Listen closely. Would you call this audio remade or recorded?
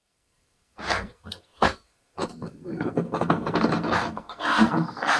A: remade